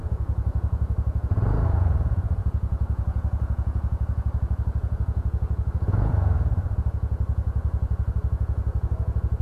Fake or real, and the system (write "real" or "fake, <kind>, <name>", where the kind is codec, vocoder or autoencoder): fake, vocoder, Vocos